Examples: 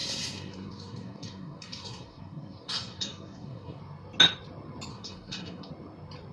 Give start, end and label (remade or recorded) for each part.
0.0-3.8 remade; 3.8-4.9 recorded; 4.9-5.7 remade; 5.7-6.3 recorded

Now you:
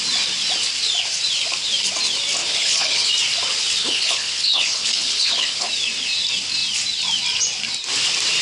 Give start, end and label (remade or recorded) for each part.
0.0-2.4 recorded; 2.4-3.1 remade; 3.1-3.8 recorded; 3.8-5.7 remade; 5.7-8.4 recorded

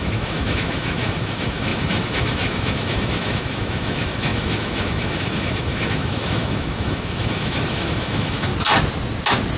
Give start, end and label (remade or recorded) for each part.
0.0-8.5 remade; 8.5-9.6 recorded

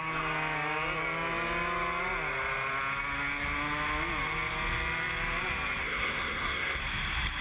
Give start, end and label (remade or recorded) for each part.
0.0-5.8 recorded; 5.8-6.8 remade; 6.8-7.4 recorded

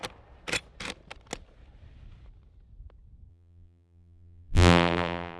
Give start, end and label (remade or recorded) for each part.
0.0-3.3 recorded; 3.3-5.4 remade

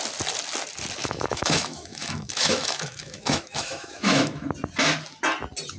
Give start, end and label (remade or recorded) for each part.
0.0-1.0 recorded; 1.0-4.5 remade; 4.5-5.8 recorded